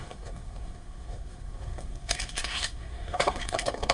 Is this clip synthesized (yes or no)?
yes